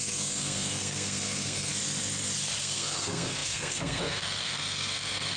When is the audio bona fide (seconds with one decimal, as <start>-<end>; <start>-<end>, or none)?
1.7-2.6